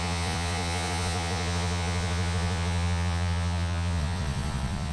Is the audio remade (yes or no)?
yes